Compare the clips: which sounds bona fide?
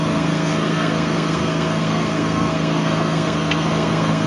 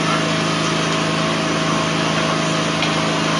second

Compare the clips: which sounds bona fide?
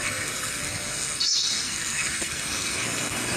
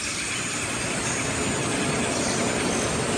second